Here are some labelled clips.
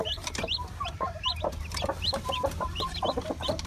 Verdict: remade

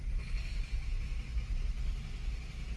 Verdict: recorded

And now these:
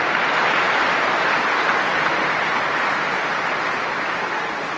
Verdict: remade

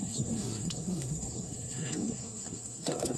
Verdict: remade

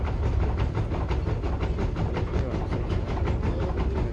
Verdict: recorded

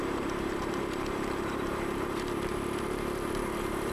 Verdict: remade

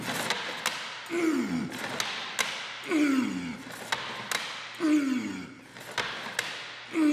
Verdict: recorded